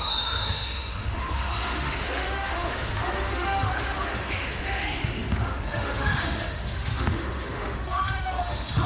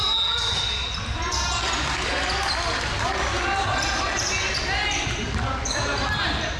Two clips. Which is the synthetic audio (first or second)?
first